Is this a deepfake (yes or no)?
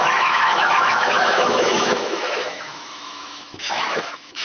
yes